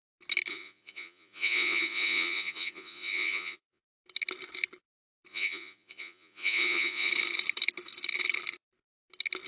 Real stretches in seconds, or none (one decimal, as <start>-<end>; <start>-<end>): 0.0-0.5; 3.8-5.3; 7.1-9.5